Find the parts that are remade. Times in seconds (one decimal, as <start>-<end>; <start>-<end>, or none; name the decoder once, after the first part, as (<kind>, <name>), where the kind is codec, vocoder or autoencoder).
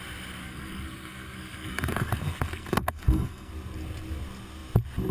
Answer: 0.4-3.5 (codec, SNAC)